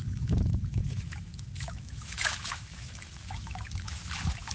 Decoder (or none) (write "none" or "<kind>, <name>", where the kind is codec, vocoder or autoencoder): autoencoder, DAC-VAE